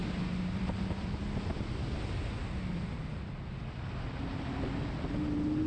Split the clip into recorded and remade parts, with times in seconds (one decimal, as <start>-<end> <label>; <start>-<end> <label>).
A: 0.0-5.7 recorded